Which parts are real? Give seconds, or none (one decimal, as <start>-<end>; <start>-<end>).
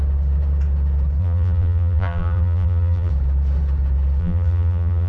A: 0.0-1.2; 3.1-4.2